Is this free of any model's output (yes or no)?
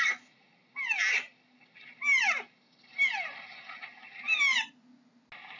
yes